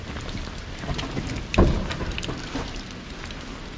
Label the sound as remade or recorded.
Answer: recorded